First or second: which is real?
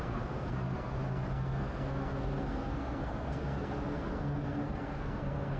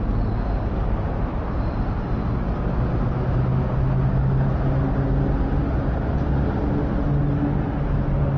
second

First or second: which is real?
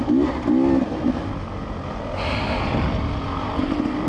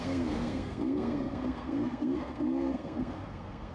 first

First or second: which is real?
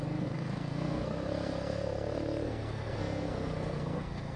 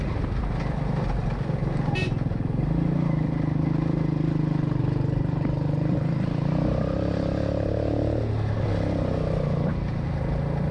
second